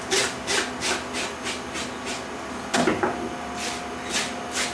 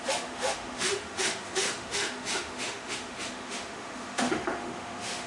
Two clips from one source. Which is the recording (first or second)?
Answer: first